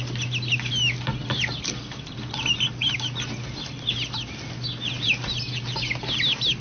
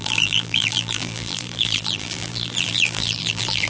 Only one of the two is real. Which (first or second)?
first